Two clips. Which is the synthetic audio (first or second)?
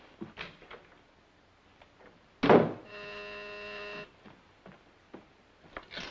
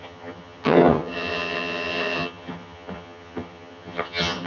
second